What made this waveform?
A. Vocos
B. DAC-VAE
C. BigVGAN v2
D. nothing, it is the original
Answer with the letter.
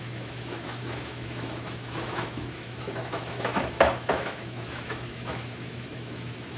B